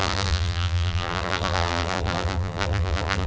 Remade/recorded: remade